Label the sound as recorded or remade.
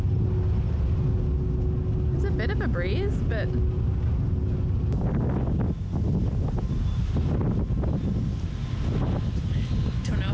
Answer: recorded